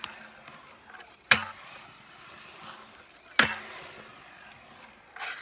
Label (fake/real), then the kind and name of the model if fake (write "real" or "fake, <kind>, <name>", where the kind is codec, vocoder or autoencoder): real